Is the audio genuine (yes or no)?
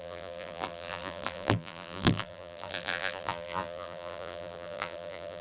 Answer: no